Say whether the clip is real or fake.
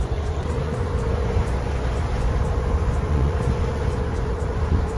fake